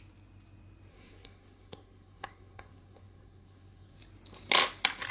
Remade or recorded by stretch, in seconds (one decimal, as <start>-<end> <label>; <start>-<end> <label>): 0.0-0.9 recorded; 0.9-4.0 remade; 4.0-5.1 recorded